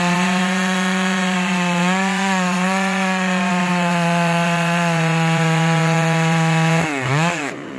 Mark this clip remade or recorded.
remade